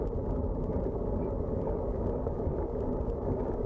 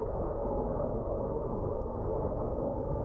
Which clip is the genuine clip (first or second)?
first